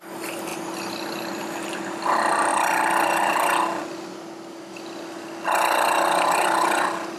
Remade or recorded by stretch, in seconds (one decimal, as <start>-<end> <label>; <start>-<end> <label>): 0.0-7.2 recorded